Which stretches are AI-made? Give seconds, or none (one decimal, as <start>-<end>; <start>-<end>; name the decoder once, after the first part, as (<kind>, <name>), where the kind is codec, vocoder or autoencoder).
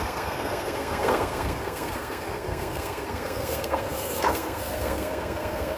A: 0.0-5.8 (codec, SNAC)